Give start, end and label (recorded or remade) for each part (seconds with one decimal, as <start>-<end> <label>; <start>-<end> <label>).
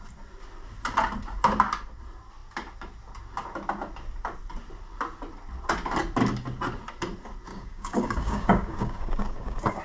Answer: 0.0-7.5 recorded; 7.5-9.8 remade